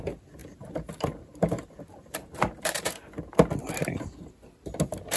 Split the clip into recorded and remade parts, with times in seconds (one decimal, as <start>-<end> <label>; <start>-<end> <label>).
0.0-0.4 recorded; 0.4-3.2 remade; 3.2-5.2 recorded